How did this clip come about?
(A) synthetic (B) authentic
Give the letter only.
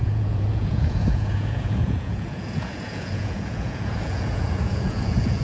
A